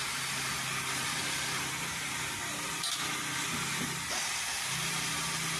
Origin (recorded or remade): recorded